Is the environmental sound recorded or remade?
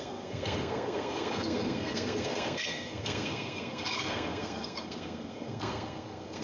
remade